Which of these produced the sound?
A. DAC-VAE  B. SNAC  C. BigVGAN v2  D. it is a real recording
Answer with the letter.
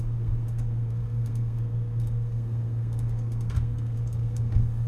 B